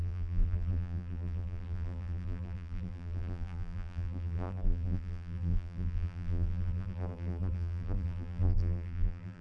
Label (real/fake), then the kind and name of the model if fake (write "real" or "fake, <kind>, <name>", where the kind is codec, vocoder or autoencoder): fake, vocoder, BigVGAN v2